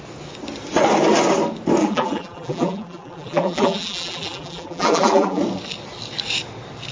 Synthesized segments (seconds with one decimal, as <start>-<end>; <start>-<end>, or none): 1.8-5.4